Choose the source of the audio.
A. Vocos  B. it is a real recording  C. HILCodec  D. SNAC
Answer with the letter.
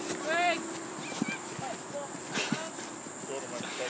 B